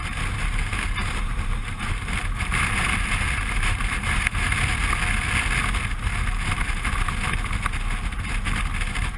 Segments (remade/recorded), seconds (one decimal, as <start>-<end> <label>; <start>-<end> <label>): 0.0-0.4 recorded; 0.4-4.5 remade; 4.5-6.1 recorded; 6.1-7.1 remade; 7.1-9.2 recorded

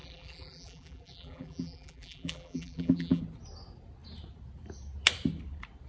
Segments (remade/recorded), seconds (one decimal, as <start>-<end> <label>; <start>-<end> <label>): 0.0-3.2 remade; 3.2-5.9 recorded

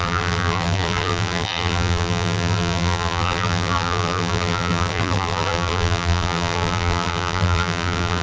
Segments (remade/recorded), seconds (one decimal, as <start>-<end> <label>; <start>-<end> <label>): 0.0-8.2 remade

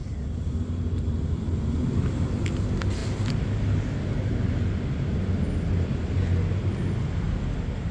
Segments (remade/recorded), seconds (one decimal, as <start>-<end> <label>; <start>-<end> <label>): 0.0-7.9 recorded

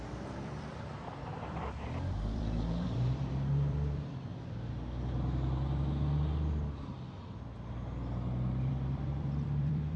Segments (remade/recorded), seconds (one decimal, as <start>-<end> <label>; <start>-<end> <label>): 0.0-4.3 remade; 4.3-8.7 recorded; 8.7-10.0 remade

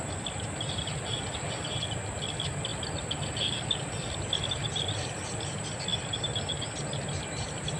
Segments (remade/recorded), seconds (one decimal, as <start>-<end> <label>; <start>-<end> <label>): 0.0-5.9 remade; 5.9-7.2 recorded; 7.2-7.8 remade